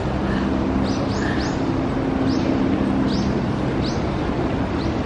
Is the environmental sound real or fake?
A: real